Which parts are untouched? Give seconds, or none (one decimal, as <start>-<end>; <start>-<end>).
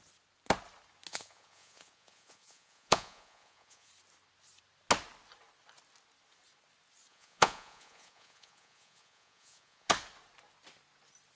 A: 0.0-1.1; 3.9-7.1; 9.9-11.4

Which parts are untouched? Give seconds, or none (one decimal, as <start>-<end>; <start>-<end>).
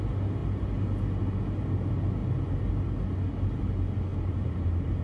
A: 0.0-4.1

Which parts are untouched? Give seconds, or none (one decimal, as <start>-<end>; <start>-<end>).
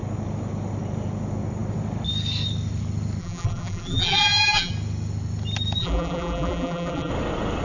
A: 0.0-3.2; 4.7-5.8; 7.1-7.6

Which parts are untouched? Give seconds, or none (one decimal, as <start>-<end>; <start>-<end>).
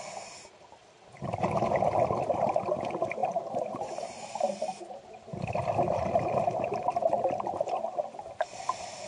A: 0.0-3.2; 4.8-9.1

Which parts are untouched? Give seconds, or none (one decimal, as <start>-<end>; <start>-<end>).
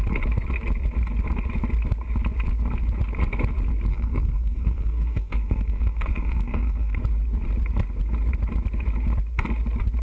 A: 0.0-3.9; 7.0-10.0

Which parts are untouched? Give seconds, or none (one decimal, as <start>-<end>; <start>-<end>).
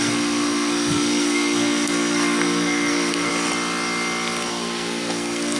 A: 3.3-4.5